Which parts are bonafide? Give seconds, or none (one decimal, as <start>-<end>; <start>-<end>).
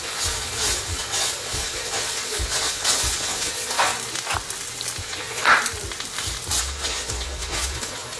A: 3.9-5.0; 5.5-6.6